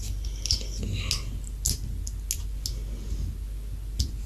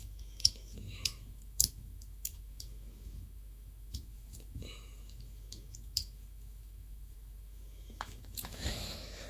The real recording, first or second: first